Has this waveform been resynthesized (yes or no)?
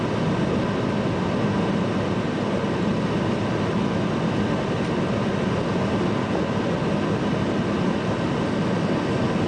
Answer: no